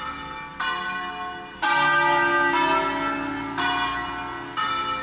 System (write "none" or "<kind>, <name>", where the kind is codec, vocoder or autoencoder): none